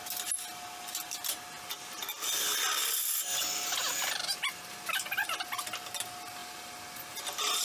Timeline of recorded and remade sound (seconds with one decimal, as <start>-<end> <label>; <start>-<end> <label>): 0.0-7.6 recorded